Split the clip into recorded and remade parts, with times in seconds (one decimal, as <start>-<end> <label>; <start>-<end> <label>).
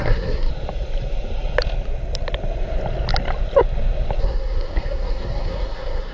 0.0-0.5 remade; 0.5-4.2 recorded; 4.2-6.1 remade